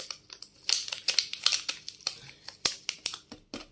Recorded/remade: recorded